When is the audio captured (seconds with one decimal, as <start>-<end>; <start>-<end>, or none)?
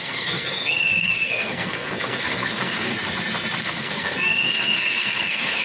2.9-3.6